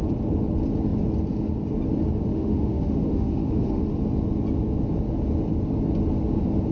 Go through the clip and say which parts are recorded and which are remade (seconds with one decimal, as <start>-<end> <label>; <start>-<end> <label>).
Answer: 0.0-2.3 recorded; 2.3-3.8 remade; 3.8-6.7 recorded